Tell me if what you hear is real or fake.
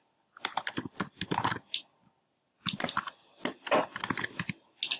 real